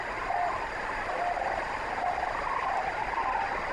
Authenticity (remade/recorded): recorded